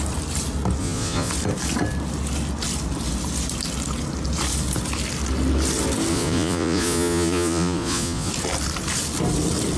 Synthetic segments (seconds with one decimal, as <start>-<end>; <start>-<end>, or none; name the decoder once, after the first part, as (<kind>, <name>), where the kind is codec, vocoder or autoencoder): 0.8-1.3 (vocoder, Vocos); 6.1-8.3

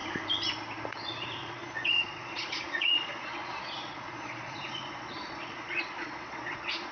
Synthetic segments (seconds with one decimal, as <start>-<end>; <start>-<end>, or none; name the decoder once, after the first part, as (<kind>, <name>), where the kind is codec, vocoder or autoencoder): 0.9-6.9 (vocoder, Vocos)

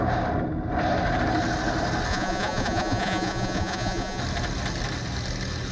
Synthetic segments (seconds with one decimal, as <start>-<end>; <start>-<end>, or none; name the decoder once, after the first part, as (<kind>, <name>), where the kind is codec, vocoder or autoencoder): 2.1-4.2 (vocoder, Vocos)

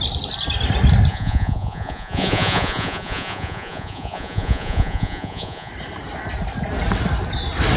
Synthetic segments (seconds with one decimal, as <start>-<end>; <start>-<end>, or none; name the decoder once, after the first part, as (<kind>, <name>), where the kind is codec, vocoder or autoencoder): 1.1-5.7 (vocoder, Vocos)